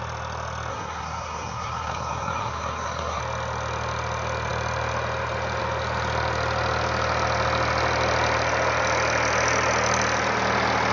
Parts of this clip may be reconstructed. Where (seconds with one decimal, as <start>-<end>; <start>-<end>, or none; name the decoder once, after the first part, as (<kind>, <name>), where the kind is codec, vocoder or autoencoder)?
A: 0.7-3.2 (codec, SNAC)